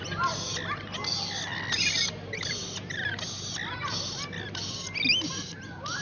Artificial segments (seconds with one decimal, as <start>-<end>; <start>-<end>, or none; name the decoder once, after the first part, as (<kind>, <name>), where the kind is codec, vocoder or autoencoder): none